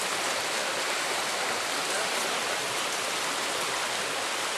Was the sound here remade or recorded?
recorded